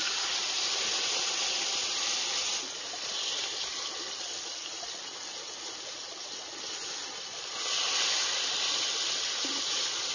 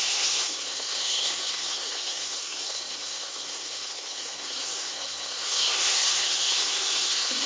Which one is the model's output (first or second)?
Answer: second